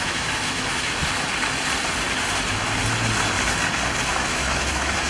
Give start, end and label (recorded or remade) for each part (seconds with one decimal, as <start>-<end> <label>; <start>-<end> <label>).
0.0-1.0 remade; 1.0-4.1 recorded; 4.1-5.1 remade